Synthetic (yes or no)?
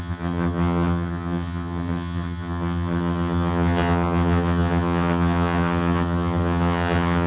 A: yes